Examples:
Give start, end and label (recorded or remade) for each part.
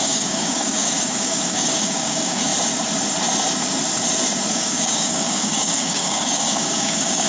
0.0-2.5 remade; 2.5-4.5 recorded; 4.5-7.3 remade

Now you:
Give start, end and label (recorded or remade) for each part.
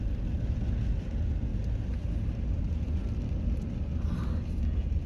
0.0-5.1 recorded